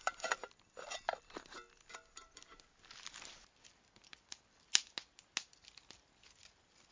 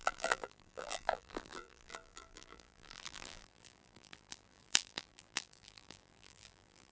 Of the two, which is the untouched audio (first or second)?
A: first